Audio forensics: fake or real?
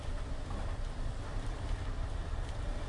fake